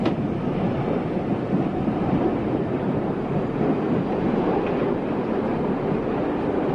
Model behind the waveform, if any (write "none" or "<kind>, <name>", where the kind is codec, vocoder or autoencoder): none